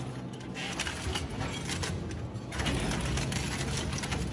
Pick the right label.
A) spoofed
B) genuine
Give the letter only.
B